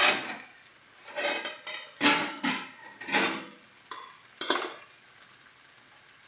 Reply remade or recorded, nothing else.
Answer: recorded